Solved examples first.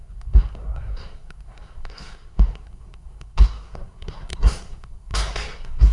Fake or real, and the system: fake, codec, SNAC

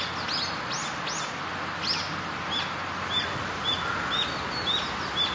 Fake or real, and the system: real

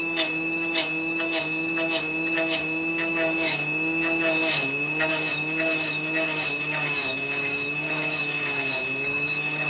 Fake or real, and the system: fake, autoencoder, DAC-VAE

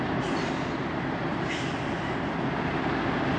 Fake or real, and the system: real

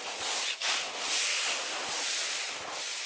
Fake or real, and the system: real